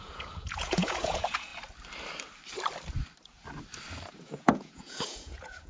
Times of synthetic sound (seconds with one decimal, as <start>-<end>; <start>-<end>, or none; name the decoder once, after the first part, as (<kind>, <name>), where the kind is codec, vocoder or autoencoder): 0.0-1.5 (vocoder, Vocos); 4.1-5.7